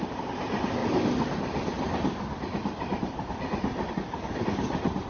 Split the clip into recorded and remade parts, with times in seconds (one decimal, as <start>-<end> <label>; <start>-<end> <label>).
0.0-0.8 recorded; 0.8-3.9 remade; 3.9-5.1 recorded